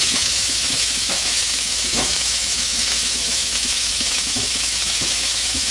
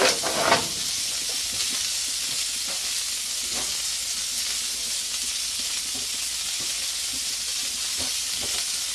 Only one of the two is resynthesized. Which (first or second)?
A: first